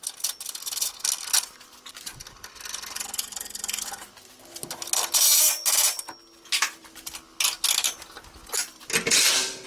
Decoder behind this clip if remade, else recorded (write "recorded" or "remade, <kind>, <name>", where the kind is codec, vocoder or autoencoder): recorded